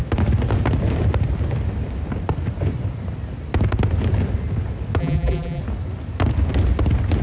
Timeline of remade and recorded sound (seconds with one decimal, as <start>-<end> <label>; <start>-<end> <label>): 0.0-5.0 recorded; 5.0-5.6 remade; 5.6-7.2 recorded